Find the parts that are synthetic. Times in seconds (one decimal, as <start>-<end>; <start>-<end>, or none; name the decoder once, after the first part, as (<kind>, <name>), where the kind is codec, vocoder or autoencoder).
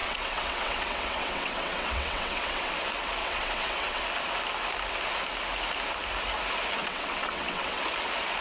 0.0-2.7 (vocoder, WaveNeXt); 3.2-4.0; 6.8-7.8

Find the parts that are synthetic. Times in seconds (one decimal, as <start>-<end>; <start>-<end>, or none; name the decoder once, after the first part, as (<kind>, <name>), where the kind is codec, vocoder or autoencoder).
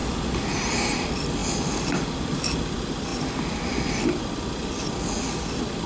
none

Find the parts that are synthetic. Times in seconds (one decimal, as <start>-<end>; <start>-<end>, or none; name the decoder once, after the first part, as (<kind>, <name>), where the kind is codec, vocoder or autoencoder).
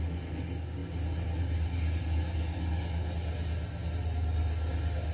none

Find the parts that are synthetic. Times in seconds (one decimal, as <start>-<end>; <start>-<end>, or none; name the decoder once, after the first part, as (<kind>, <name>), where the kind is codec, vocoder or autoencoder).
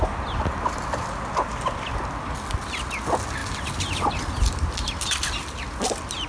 none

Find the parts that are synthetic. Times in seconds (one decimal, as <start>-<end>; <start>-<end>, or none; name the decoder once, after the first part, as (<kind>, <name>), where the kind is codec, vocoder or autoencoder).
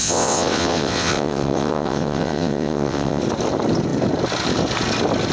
0.0-3.2 (vocoder, WaveNeXt)